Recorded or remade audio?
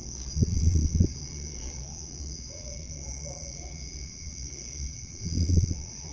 remade